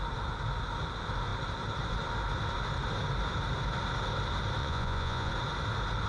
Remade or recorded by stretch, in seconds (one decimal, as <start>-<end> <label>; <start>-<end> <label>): 0.0-4.6 recorded; 4.6-5.3 remade; 5.3-6.1 recorded